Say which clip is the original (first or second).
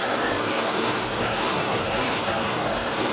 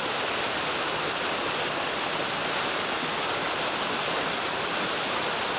second